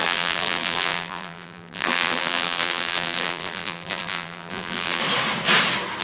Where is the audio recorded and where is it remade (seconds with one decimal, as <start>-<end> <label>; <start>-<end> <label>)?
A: 0.0-5.0 remade; 5.0-6.0 recorded